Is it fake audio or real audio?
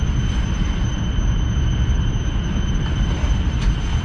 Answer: real